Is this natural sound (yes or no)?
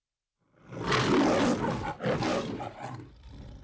yes